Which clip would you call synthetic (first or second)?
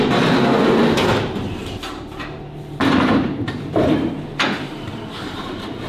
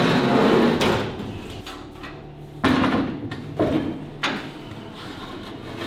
first